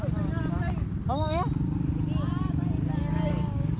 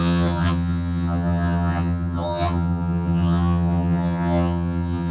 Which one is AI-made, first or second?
second